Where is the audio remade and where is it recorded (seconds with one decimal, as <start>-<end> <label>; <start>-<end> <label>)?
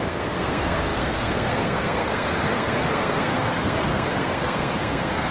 0.0-5.3 remade